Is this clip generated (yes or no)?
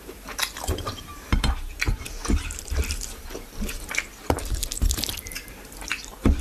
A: yes